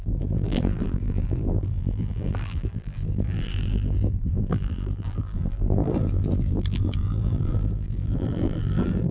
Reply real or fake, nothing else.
fake